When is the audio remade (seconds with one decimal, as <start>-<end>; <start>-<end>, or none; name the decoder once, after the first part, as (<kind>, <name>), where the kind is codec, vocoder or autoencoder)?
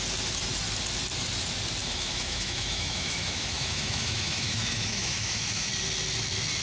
1.8-5.7 (autoencoder, DAC-VAE)